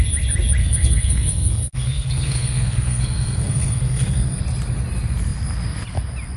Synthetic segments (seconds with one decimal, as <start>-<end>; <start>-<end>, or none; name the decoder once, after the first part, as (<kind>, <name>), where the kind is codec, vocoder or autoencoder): 0.6-4.4 (codec, SNAC)